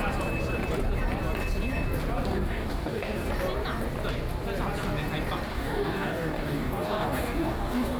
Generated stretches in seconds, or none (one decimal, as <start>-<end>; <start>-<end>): 2.3-3.3; 5.5-8.0